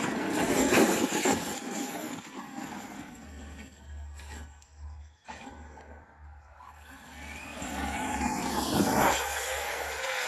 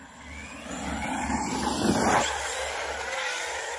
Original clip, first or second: second